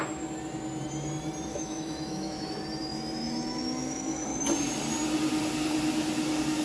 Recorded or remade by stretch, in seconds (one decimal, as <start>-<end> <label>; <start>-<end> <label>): 0.0-1.5 recorded; 1.5-2.5 remade; 2.5-2.9 recorded; 2.9-4.4 remade; 4.4-6.6 recorded